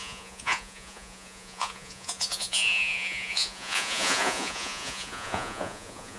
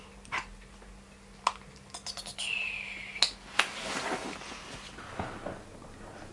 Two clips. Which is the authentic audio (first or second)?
second